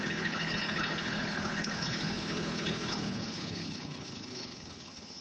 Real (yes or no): no